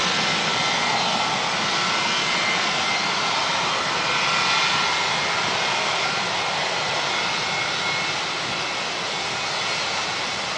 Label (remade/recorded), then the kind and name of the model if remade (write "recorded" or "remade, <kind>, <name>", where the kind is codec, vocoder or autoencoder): recorded